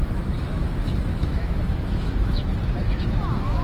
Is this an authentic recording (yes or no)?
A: no